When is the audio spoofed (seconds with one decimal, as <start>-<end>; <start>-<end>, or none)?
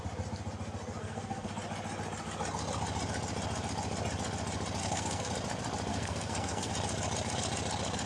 1.0-1.5; 4.8-5.3; 5.9-6.7